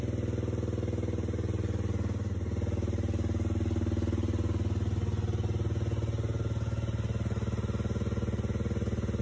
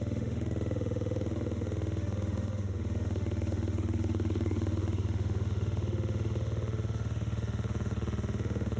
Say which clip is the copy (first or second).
second